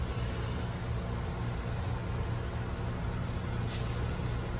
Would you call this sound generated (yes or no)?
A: no